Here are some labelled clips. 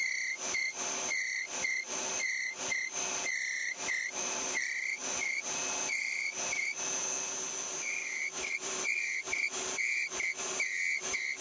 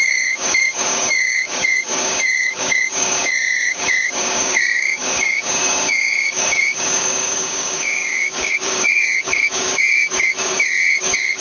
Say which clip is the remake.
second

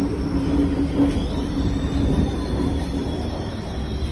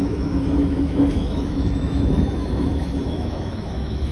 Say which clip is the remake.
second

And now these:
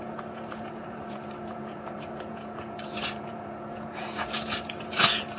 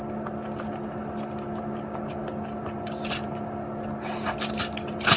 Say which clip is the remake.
first